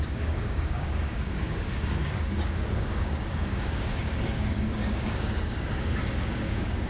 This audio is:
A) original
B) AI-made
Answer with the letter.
B